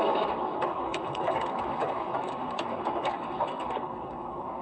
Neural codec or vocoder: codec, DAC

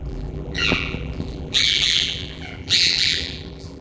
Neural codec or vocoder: vocoder, BigVGAN v2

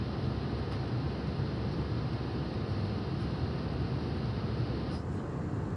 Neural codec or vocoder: none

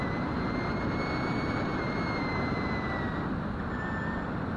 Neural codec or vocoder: none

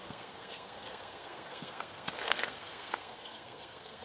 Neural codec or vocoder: codec, SNAC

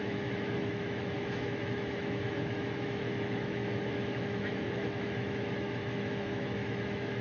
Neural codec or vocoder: autoencoder, DAC-VAE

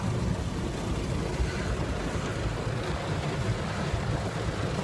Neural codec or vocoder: none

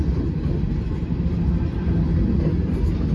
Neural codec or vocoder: none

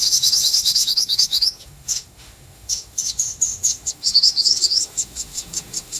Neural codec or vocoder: autoencoder, DAC-VAE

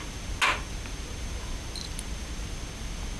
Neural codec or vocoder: none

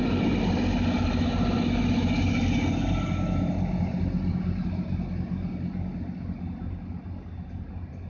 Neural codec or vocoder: none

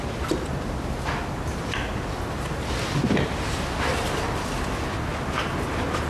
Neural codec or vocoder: none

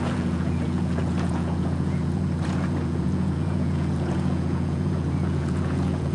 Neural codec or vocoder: vocoder, Vocos